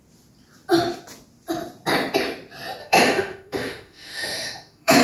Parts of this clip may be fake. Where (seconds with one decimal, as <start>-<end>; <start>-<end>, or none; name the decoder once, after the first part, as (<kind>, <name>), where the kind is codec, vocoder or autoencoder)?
2.8-5.0 (autoencoder, DAC-VAE)

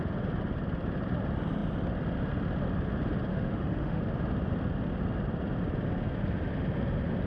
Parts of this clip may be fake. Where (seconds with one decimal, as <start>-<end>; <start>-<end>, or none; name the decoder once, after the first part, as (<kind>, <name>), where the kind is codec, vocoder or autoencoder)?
3.3-4.0 (autoencoder, DAC-VAE)

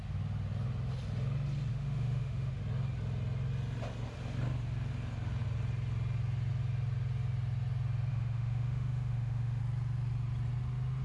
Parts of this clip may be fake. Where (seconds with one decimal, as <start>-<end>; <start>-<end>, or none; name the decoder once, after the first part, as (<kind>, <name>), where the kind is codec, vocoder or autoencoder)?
1.7-2.6 (autoencoder, DAC-VAE); 8.1-9.6

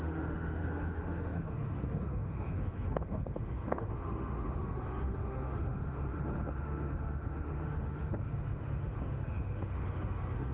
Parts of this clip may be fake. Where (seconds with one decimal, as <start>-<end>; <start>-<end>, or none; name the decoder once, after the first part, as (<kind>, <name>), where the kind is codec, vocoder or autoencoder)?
0.0-10.5 (autoencoder, DAC-VAE)

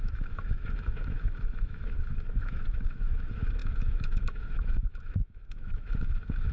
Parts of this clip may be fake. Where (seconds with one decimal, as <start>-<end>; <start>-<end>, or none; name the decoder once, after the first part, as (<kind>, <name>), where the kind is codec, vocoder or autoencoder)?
0.0-6.5 (autoencoder, DAC-VAE)

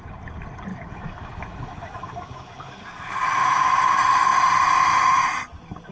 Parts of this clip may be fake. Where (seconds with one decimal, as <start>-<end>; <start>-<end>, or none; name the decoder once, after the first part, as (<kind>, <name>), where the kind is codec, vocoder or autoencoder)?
0.7-2.8 (autoencoder, DAC-VAE)

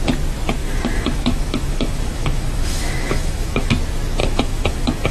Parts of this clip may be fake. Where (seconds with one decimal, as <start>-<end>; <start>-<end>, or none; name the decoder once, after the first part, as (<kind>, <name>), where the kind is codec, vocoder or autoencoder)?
0.6-3.7 (autoencoder, DAC-VAE); 4.2-5.1

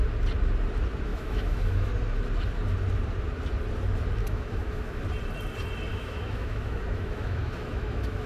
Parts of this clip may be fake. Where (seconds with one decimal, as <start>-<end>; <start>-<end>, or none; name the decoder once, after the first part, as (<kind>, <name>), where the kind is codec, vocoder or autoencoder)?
1.1-1.9 (autoencoder, DAC-VAE); 4.2-5.0; 5.9-8.3